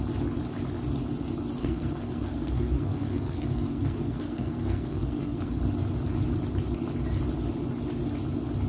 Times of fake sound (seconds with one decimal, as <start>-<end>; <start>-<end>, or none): 1.6-5.6